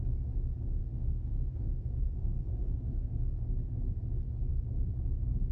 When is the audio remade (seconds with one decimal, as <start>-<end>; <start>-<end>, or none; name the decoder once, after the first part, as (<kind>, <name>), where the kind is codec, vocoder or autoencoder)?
0.8-3.0 (codec, SNAC)